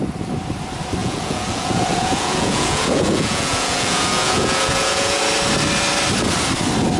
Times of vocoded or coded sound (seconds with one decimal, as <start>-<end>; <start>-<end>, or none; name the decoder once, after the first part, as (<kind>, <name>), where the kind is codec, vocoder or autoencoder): 1.0-5.2 (vocoder, Vocos)